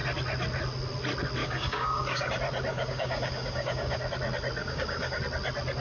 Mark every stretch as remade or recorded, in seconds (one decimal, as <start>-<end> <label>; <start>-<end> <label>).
0.0-1.4 recorded; 1.4-2.3 remade; 2.3-2.7 recorded; 2.7-4.0 remade; 4.0-4.6 recorded; 4.6-5.2 remade; 5.2-5.8 recorded